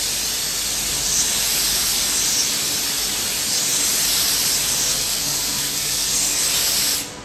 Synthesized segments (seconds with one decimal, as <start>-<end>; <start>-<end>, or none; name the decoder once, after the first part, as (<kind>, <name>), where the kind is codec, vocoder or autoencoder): 4.9-6.4 (codec, SNAC)